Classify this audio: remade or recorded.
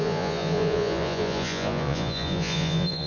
remade